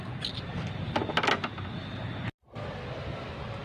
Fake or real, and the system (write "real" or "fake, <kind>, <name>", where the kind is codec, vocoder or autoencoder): real